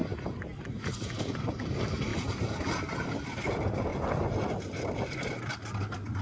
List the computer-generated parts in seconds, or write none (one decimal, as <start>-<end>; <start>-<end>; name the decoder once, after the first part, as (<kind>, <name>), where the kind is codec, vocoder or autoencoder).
0.8-2.1 (vocoder, BigVGAN v2); 2.9-3.9; 5.8-6.2

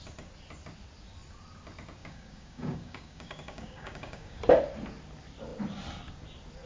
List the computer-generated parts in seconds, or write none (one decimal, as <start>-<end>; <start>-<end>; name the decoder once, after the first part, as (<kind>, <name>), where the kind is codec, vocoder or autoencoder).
2.0-4.4 (codec, DAC)

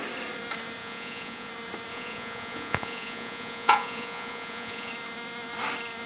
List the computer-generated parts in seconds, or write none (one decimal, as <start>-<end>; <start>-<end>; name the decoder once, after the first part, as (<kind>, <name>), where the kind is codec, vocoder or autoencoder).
0.8-1.5 (vocoder, Vocos); 1.9-4.9